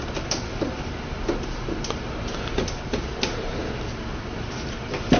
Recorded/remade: recorded